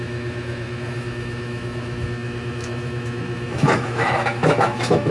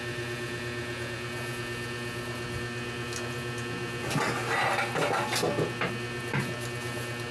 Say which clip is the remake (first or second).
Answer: first